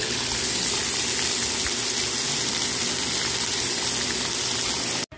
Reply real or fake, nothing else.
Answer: real